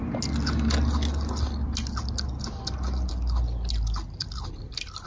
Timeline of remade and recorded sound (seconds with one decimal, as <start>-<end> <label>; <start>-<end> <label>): 0.0-5.1 recorded